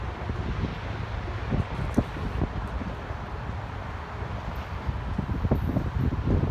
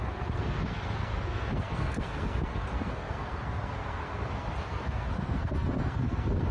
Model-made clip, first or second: second